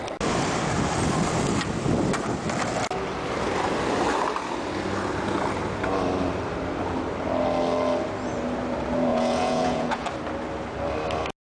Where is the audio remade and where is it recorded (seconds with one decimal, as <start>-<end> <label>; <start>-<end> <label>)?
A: 0.0-9.1 recorded; 9.1-10.1 remade; 10.1-11.5 recorded